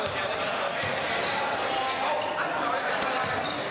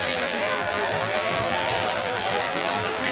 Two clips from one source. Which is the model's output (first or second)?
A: second